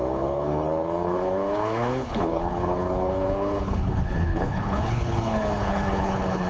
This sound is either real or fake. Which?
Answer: fake